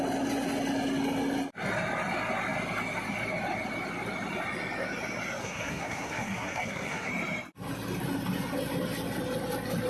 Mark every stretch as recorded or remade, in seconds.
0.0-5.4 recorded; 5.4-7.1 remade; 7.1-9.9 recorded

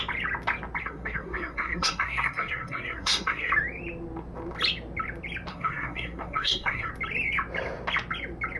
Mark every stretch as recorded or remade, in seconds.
0.0-0.8 recorded; 0.8-3.5 remade; 3.5-5.5 recorded; 5.5-6.9 remade; 6.9-8.6 recorded

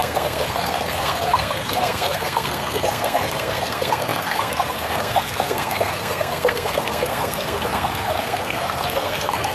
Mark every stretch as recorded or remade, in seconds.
0.0-9.5 remade

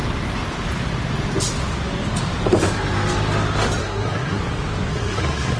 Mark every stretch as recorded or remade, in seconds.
0.0-3.8 recorded; 3.8-4.4 remade; 4.4-4.9 recorded; 4.9-5.6 remade

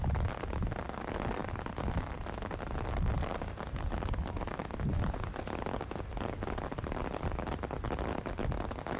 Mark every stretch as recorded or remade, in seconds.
0.0-9.0 recorded

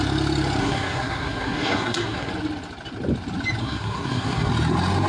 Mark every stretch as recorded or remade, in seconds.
0.0-0.6 recorded; 0.6-2.3 remade; 2.3-3.6 recorded; 3.6-4.5 remade; 4.5-5.1 recorded

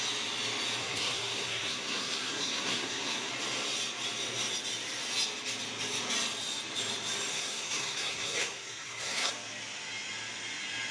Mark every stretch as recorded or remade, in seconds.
0.0-0.8 recorded; 0.8-3.3 remade; 3.3-7.3 recorded; 7.3-9.3 remade; 9.3-10.9 recorded